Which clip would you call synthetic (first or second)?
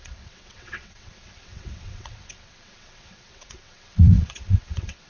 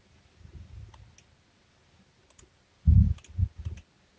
first